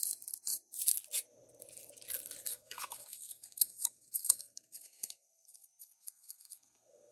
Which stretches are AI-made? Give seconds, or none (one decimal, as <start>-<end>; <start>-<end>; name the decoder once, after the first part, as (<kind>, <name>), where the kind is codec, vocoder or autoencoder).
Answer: 2.5-7.1 (codec, SNAC)